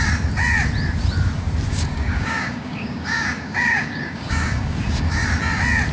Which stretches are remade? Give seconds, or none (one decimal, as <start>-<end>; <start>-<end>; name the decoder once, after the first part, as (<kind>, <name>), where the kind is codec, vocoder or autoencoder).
1.7-5.2 (codec, DAC)